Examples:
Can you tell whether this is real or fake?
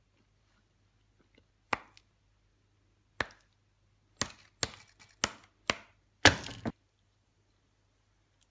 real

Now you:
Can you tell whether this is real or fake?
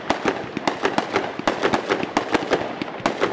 real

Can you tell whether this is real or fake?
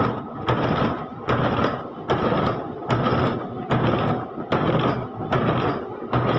real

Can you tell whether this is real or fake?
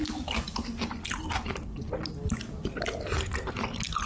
real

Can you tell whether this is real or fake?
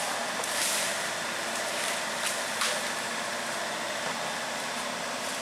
fake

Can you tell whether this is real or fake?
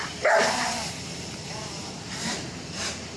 fake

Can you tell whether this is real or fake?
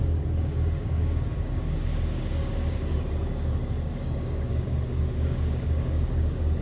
fake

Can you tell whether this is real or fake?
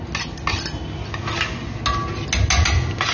real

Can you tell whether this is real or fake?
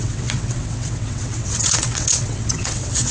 fake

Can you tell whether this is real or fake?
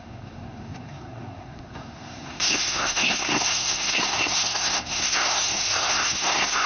fake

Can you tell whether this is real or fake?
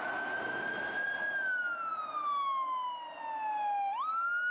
real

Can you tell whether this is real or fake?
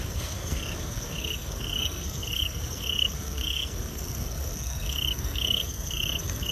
fake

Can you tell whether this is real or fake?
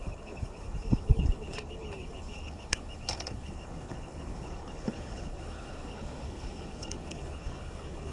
fake